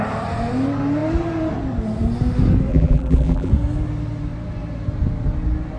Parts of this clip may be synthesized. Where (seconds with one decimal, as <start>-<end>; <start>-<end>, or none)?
2.7-3.5